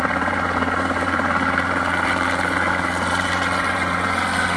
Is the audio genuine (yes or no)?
no